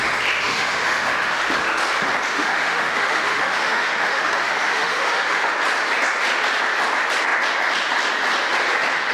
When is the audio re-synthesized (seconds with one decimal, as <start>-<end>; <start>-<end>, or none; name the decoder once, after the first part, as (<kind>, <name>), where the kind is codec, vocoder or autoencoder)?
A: 0.4-1.4 (autoencoder, DAC-VAE); 2.3-5.5